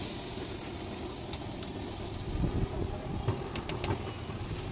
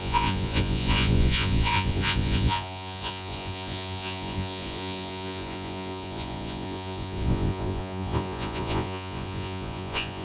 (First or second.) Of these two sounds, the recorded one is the first